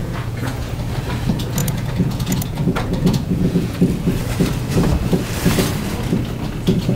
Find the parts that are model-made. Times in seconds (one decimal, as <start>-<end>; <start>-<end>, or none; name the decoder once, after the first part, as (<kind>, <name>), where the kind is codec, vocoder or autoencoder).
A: 0.0-0.7 (vocoder, Vocos); 1.6-3.8